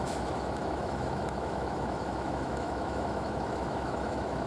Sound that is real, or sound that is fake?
fake